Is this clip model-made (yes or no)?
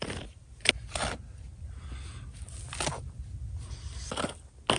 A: no